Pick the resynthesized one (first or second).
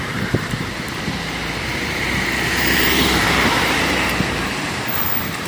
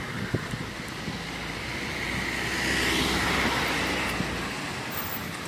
first